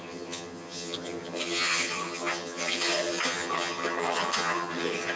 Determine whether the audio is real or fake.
fake